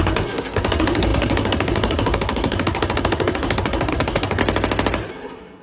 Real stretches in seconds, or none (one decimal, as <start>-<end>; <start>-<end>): 4.4-5.1